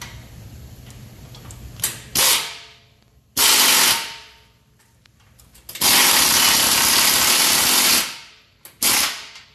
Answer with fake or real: real